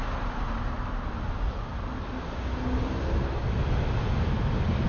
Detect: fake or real real